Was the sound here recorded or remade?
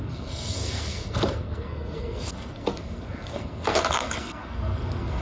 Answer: remade